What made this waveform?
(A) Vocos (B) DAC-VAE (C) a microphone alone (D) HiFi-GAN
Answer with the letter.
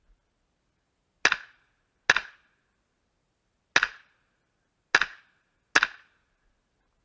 C